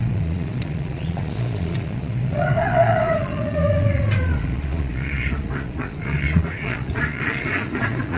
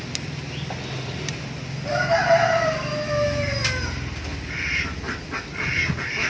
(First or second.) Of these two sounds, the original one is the second